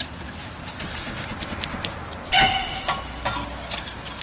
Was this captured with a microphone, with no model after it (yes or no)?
yes